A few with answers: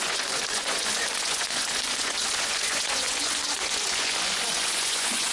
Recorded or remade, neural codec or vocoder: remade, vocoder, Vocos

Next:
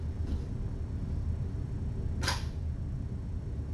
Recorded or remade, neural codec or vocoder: recorded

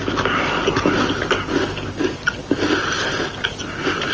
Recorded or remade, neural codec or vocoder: recorded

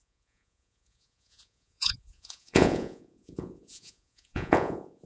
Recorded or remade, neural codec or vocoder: remade, vocoder, Vocos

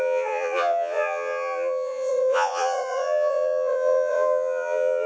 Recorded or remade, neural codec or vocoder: remade, vocoder, Vocos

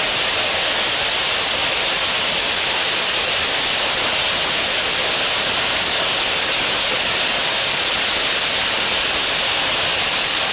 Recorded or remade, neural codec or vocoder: recorded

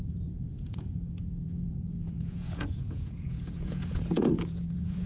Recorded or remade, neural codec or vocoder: remade, vocoder, Vocos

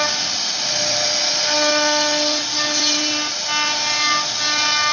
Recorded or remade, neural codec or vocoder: recorded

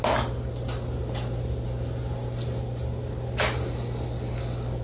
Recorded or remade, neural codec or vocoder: recorded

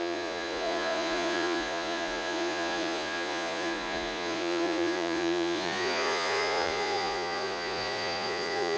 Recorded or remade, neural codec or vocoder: remade, vocoder, Vocos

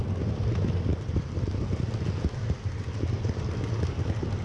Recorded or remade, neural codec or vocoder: recorded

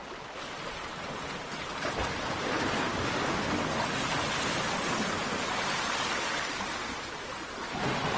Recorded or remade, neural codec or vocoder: recorded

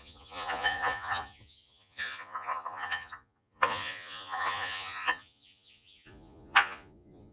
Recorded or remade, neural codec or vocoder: remade, vocoder, Vocos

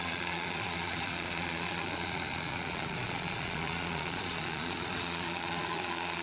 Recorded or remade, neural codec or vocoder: remade, vocoder, Vocos